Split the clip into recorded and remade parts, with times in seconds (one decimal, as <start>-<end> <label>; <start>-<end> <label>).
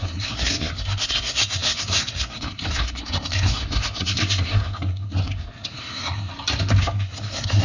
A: 0.0-6.3 remade; 6.3-6.8 recorded; 6.8-7.6 remade